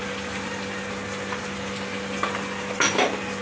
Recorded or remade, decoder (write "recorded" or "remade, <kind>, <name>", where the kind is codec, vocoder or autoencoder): recorded